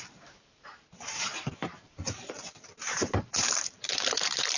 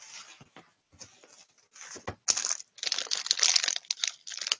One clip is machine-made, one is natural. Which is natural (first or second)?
second